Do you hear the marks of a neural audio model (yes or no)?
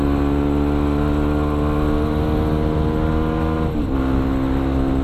no